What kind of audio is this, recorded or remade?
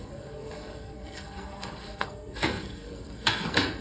remade